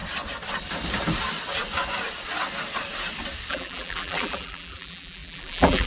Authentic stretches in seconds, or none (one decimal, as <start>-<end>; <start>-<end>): 0.0-3.5